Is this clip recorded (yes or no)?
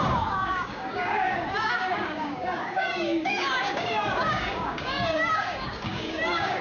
no